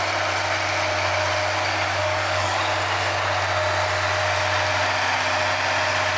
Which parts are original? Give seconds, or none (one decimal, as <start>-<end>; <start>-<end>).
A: 0.0-2.0; 2.6-6.2